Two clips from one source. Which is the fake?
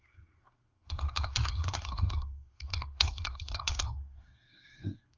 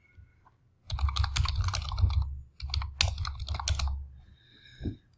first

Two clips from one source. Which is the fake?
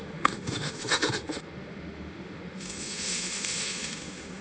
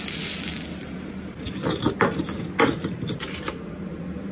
first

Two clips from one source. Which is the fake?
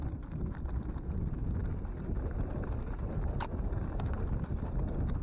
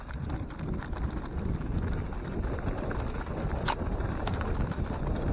second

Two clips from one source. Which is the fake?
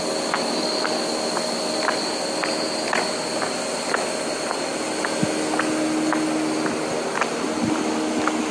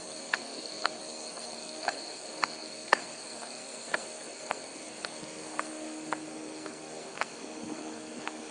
second